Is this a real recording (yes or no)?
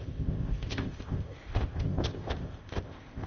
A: no